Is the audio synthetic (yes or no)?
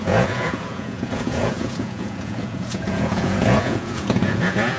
yes